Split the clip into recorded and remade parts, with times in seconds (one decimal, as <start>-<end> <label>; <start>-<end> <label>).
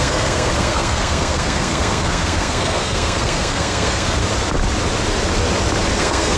0.0-4.2 remade; 4.2-6.0 recorded; 6.0-6.4 remade